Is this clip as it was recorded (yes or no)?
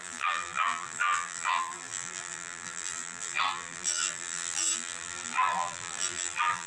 no